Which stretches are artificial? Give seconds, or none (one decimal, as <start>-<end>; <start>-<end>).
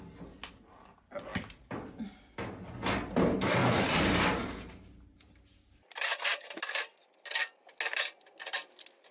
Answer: 3.6-6.6